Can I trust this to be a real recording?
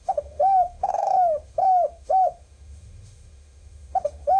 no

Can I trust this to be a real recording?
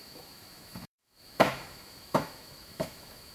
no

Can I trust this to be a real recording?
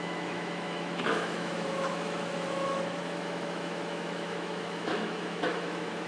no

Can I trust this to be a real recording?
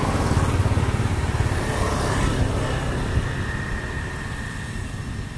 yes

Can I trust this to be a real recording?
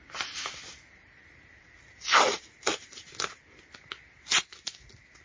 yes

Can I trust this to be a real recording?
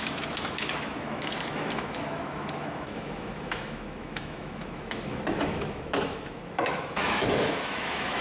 no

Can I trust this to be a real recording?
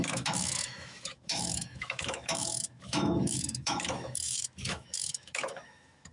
no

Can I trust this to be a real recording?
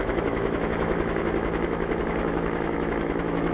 no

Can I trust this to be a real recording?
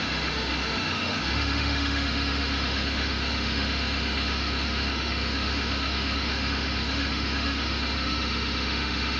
no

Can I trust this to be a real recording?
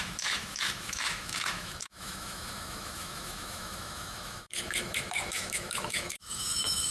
no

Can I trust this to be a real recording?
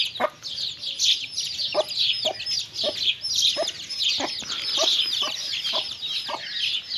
yes